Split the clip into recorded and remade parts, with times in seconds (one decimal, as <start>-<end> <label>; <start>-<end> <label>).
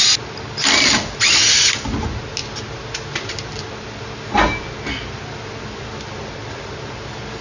0.0-7.4 recorded